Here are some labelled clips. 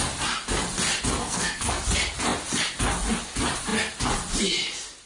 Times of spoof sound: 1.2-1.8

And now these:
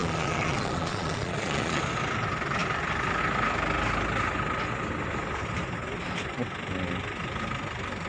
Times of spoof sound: 0.0-1.8